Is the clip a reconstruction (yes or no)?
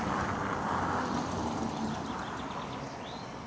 no